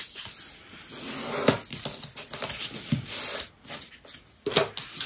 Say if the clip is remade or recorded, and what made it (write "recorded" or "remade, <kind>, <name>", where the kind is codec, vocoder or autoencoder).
recorded